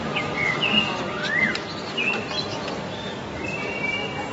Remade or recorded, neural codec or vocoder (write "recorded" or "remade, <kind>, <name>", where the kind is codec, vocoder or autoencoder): recorded